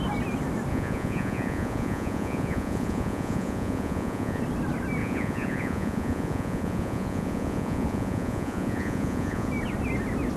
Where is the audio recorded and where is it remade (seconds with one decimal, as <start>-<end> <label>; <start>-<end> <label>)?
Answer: 0.0-0.7 recorded; 0.7-4.4 remade; 4.4-5.0 recorded; 5.0-9.5 remade; 9.5-10.4 recorded